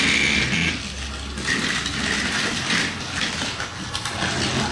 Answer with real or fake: real